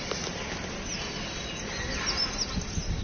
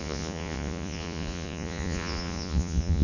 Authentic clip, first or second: first